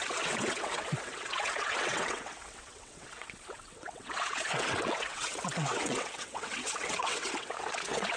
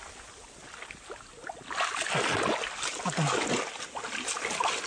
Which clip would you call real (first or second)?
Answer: second